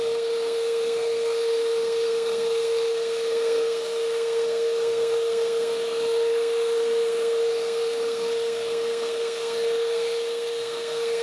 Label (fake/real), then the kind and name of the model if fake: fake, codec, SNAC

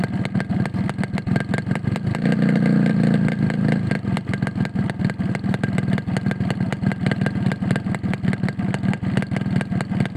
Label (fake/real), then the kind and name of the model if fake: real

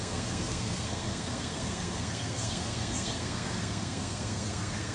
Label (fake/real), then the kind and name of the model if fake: fake, codec, SNAC